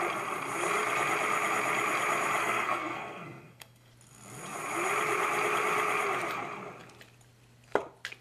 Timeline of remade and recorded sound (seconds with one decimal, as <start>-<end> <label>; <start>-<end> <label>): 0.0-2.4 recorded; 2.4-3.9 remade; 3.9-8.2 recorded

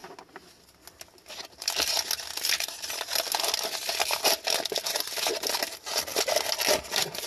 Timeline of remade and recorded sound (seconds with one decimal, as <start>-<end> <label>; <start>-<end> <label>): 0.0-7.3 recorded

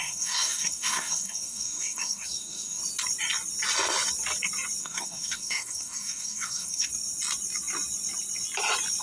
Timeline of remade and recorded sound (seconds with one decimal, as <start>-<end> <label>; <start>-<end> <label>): 0.0-2.8 remade; 2.8-4.8 recorded; 4.8-6.9 remade; 6.9-9.0 recorded

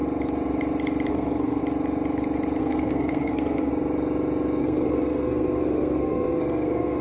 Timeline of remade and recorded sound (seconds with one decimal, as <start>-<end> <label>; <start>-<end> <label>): 0.0-1.1 recorded; 1.1-1.6 remade; 1.6-2.6 recorded; 2.6-3.7 remade; 3.7-4.6 recorded; 4.6-7.0 remade